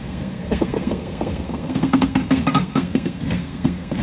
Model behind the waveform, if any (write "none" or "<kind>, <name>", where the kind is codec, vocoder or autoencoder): codec, SNAC